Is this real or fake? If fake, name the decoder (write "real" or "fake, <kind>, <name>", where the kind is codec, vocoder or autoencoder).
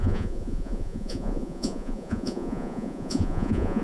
fake, vocoder, Vocos